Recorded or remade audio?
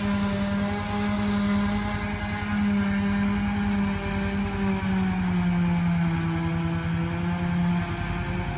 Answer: recorded